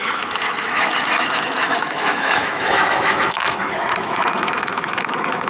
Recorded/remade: remade